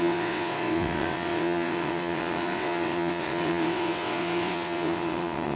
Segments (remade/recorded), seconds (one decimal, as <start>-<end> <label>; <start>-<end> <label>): 0.0-5.6 remade